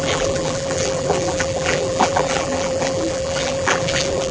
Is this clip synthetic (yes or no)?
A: yes